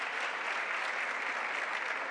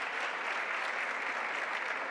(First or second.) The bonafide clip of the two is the second